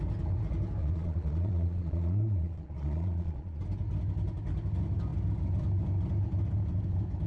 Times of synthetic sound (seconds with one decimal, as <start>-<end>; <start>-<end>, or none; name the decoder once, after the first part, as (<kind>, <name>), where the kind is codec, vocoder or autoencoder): 0.8-3.6 (vocoder, Vocos)